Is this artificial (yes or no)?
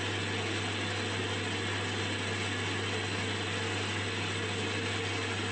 no